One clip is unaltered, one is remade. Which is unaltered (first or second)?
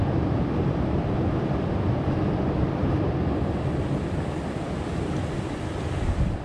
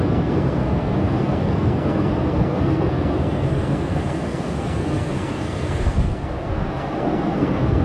first